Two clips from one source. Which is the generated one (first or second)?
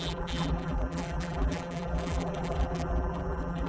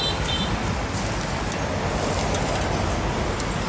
first